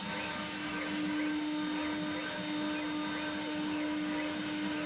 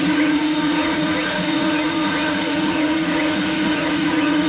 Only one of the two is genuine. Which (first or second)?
first